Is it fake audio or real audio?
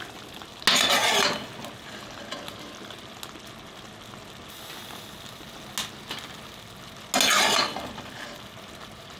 real